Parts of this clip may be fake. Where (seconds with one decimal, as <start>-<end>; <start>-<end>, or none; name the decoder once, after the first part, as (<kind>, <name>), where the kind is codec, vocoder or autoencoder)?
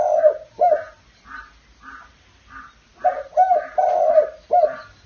none